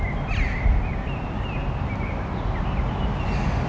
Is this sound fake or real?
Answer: real